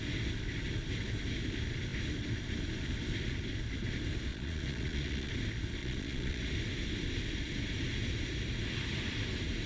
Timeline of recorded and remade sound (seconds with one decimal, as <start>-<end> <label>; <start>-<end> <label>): 0.0-4.3 recorded; 4.3-5.3 remade; 5.3-5.8 recorded; 5.8-6.4 remade; 6.4-9.7 recorded